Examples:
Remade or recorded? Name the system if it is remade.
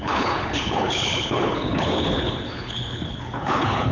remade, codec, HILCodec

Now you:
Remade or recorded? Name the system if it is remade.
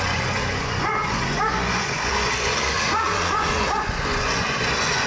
remade, vocoder, Vocos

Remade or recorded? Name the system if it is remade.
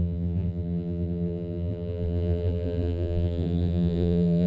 remade, vocoder, BigVGAN v2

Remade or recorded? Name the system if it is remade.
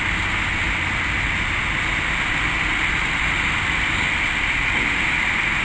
recorded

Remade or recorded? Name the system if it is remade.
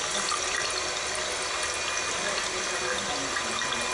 recorded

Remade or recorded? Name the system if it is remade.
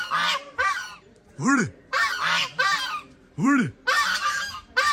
remade, vocoder, BigVGAN v2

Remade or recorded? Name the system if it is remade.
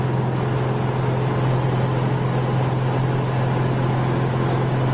recorded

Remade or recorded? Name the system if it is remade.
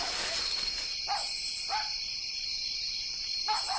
remade, vocoder, BigVGAN v2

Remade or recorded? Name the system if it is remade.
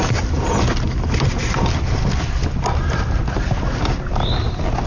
recorded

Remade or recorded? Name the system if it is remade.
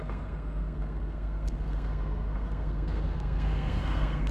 remade, codec, SNAC